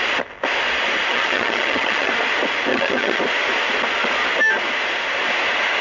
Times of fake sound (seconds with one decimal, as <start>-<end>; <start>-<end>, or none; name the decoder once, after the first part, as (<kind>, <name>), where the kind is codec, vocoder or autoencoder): 1.1-2.1 (vocoder, HiFi-GAN); 2.7-3.2